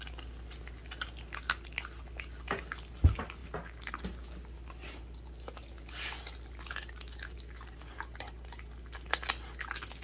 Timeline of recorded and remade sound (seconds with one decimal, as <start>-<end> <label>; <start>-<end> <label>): 0.0-10.0 recorded